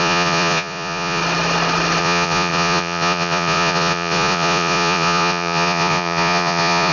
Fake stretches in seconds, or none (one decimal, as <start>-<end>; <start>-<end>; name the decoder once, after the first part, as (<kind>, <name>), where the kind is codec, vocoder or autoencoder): 0.0-1.2 (vocoder, Vocos); 2.0-6.9